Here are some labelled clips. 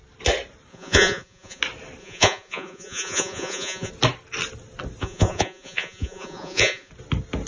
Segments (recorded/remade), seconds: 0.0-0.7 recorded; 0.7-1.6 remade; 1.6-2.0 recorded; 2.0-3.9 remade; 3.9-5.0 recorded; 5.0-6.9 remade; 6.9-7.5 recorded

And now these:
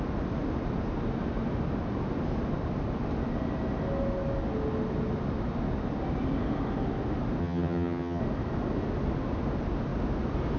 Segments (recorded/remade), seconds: 0.0-7.4 recorded; 7.4-8.2 remade; 8.2-10.6 recorded

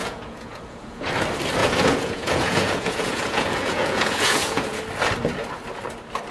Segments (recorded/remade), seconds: 0.0-1.1 remade; 1.1-1.6 recorded; 1.6-4.8 remade; 4.8-6.3 recorded